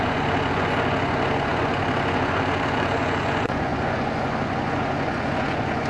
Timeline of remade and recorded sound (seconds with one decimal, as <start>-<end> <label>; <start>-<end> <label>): 0.0-5.9 remade